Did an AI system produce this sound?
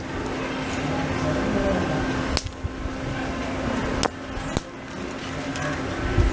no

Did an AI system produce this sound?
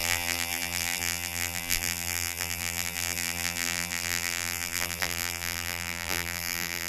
yes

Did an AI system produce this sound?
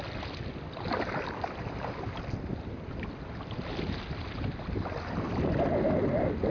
no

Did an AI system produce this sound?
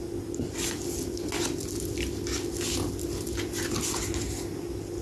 no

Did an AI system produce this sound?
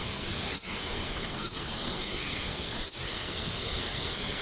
yes